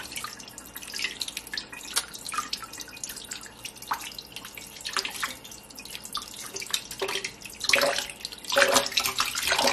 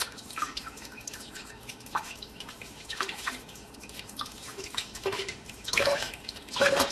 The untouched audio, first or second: first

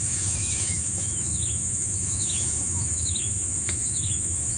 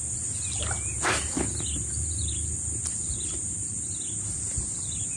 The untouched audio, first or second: second